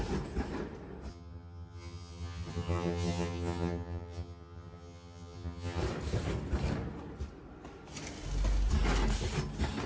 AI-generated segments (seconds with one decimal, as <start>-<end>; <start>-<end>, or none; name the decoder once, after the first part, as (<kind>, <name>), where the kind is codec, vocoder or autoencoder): 1.1-5.8 (vocoder, HiFi-GAN)